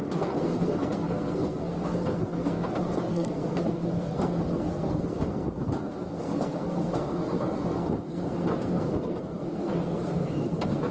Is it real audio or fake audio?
fake